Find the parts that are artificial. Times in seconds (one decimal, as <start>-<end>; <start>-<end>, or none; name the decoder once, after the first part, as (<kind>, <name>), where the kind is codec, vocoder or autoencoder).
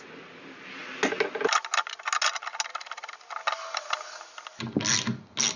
none